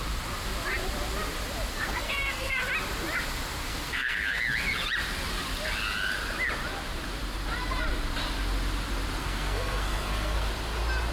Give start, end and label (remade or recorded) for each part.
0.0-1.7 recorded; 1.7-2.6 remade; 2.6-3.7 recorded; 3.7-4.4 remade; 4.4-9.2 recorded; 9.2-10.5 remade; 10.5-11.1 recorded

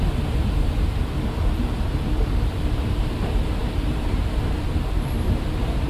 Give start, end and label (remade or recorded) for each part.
0.0-5.9 remade